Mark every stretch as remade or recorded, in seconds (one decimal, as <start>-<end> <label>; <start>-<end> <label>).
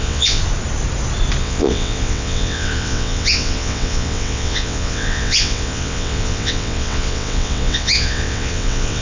0.0-0.4 remade; 0.4-1.4 recorded; 1.4-9.0 remade